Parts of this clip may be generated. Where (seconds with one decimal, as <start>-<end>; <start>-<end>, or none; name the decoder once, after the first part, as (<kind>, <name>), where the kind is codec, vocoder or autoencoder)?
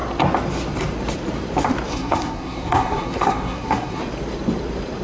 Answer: 1.9-4.0 (codec, SNAC)